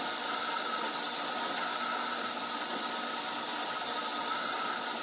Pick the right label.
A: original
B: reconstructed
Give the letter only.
A